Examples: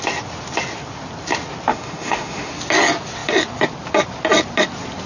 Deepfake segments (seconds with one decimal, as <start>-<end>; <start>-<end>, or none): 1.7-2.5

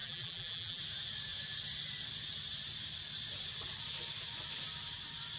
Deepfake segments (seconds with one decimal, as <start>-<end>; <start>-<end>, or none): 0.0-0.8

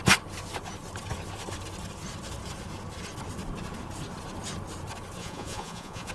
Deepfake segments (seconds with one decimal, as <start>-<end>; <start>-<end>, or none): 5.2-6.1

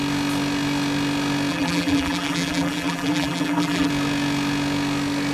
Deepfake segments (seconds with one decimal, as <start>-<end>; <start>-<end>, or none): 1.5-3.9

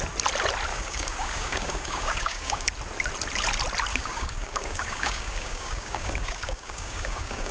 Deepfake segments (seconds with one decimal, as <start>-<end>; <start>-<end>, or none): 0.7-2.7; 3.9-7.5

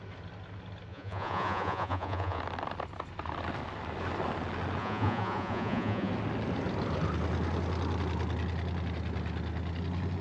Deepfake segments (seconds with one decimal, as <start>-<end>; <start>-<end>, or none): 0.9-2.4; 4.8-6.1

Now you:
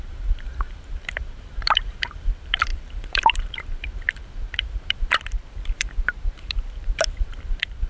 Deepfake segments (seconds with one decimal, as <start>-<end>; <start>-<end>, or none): 0.0-7.9

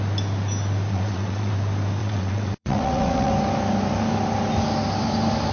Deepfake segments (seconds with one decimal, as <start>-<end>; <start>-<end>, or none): 0.9-1.5; 2.0-3.3